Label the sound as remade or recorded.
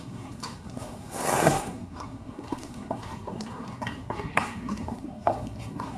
remade